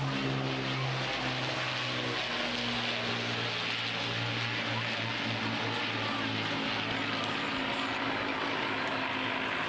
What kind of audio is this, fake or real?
real